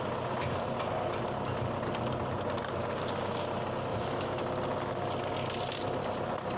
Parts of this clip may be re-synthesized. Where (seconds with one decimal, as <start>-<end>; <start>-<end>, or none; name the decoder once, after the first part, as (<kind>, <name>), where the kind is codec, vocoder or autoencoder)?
3.9-4.4 (autoencoder, DAC-VAE)